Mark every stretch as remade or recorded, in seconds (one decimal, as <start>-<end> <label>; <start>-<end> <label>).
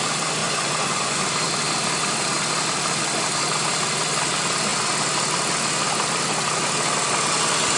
0.0-0.4 recorded; 0.4-1.2 remade; 1.2-7.8 recorded